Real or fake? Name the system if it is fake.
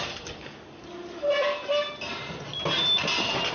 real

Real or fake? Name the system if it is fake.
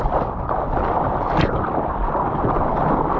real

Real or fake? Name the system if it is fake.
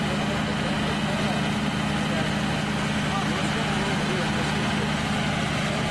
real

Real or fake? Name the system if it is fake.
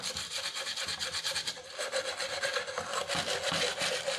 real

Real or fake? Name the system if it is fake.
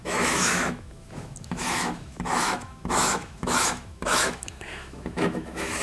fake, autoencoder, DAC-VAE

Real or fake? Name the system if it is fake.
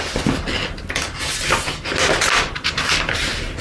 real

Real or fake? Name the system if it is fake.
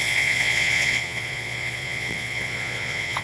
fake, vocoder, Vocos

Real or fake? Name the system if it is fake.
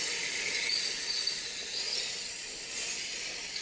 real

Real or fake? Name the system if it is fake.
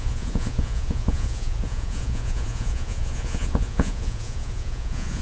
fake, vocoder, Vocos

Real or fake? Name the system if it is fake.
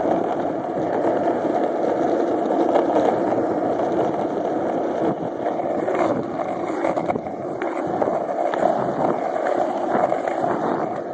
real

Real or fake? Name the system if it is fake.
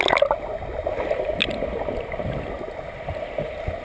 real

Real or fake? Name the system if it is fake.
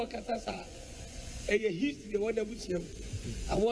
fake, vocoder, Vocos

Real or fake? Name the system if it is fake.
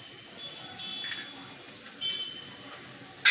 real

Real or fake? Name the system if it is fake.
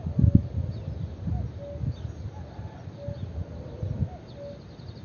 real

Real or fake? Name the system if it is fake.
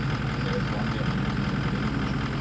real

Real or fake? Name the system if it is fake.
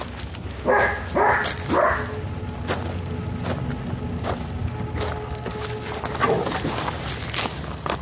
real